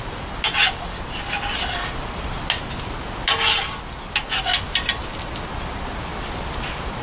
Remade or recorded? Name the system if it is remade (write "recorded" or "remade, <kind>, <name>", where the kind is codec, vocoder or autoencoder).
recorded